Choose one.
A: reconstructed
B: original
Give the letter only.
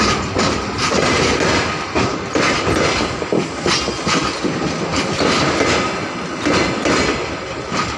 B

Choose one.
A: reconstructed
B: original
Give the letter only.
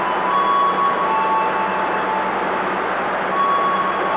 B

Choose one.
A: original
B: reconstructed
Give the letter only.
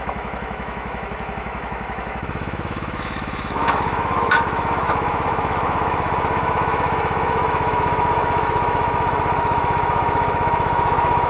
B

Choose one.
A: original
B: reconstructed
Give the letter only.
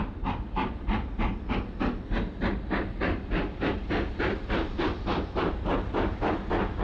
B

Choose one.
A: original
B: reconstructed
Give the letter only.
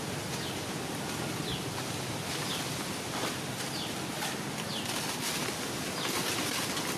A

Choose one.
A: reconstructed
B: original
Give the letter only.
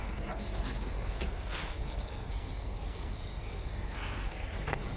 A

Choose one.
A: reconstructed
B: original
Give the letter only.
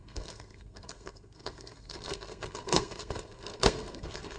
A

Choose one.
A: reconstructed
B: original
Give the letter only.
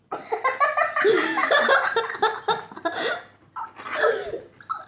B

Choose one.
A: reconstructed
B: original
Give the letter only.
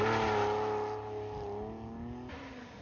B